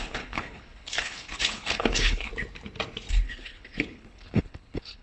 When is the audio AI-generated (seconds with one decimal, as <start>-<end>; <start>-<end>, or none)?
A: 0.0-2.3; 3.1-5.0